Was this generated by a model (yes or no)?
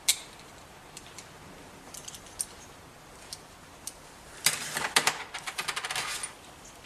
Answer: no